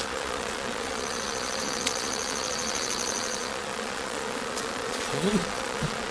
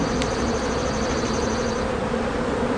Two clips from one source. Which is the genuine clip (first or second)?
second